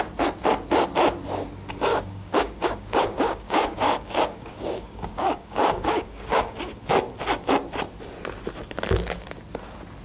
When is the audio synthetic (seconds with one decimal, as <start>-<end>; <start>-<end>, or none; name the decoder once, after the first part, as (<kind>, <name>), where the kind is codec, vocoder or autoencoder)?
1.9-6.8 (codec, DAC)